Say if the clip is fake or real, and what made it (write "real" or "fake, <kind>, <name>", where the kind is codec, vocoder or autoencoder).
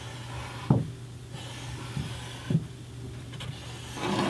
real